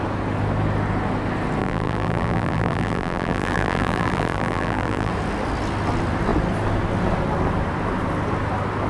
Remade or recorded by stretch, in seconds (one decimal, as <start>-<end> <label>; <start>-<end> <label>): 0.0-1.6 recorded; 1.6-5.1 remade; 5.1-8.9 recorded

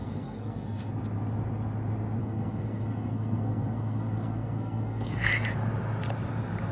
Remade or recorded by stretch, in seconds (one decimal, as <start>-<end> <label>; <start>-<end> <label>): 0.0-0.9 remade; 0.9-2.2 recorded; 2.2-5.3 remade; 5.3-6.7 recorded

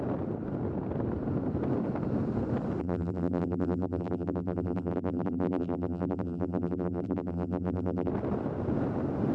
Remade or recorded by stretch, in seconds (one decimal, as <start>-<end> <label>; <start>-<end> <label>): 0.0-2.8 recorded; 2.8-8.1 remade; 8.1-9.3 recorded